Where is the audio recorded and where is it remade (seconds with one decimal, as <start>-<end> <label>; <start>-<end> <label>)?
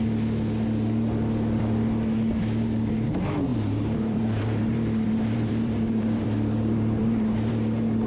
0.0-3.5 recorded; 3.5-7.5 remade; 7.5-8.1 recorded